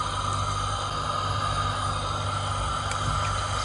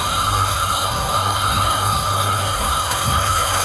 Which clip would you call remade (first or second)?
second